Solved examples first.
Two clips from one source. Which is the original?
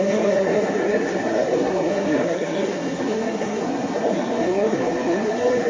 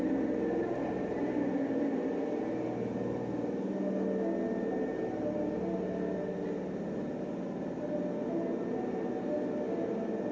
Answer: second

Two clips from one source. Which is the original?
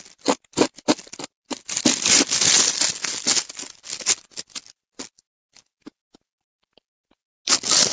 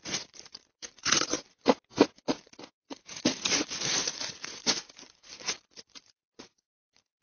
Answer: first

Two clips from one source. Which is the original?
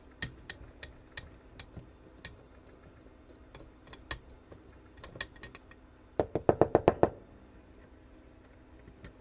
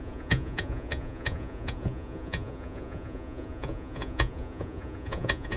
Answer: first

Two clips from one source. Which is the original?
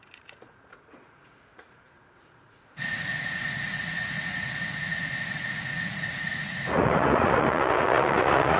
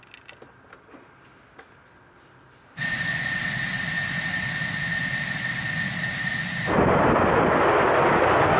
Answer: second